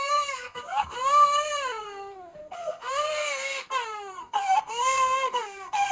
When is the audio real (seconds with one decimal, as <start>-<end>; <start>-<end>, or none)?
none